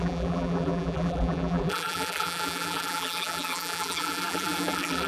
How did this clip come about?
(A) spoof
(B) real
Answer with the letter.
A